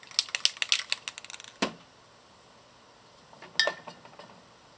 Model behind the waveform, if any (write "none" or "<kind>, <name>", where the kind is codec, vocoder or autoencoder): none